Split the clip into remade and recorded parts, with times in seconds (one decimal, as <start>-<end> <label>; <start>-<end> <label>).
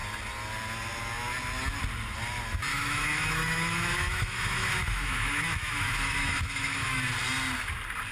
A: 0.0-2.7 recorded; 2.7-7.1 remade; 7.1-8.1 recorded